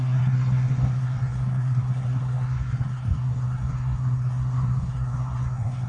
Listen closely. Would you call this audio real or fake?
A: fake